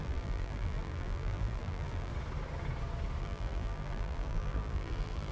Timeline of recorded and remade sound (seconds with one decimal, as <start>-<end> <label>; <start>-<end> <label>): 0.0-2.1 remade; 2.1-3.2 recorded; 3.2-5.3 remade